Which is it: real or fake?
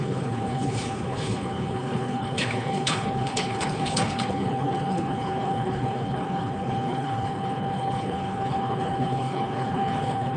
fake